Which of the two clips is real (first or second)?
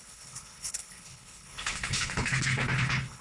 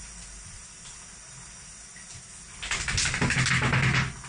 second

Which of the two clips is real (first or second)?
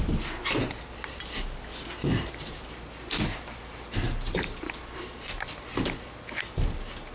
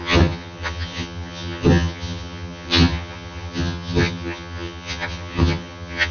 first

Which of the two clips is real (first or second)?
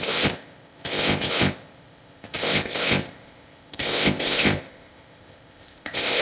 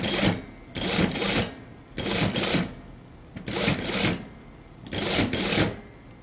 second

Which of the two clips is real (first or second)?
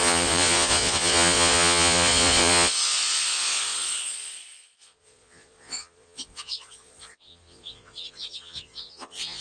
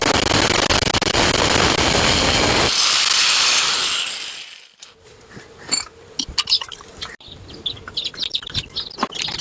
second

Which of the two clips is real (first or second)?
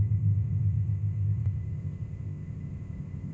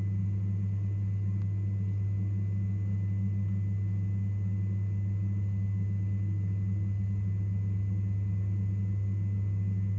second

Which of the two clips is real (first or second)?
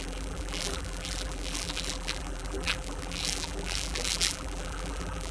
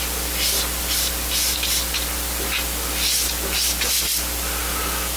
second